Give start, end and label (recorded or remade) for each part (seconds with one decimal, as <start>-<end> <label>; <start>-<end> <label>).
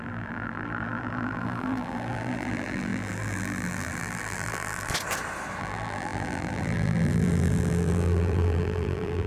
0.0-4.9 remade; 4.9-5.6 recorded; 5.6-9.3 remade